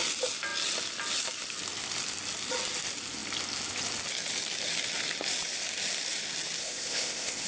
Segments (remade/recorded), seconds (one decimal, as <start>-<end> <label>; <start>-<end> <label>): 0.0-6.6 recorded; 6.6-7.5 remade